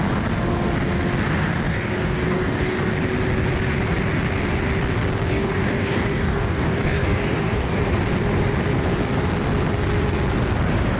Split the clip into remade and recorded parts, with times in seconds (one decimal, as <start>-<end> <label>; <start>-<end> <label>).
0.0-1.7 recorded; 1.7-2.9 remade; 2.9-5.3 recorded; 5.3-7.8 remade; 7.8-11.0 recorded